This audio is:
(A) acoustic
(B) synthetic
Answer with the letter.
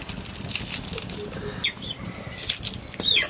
A